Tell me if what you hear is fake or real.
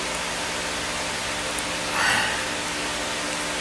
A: real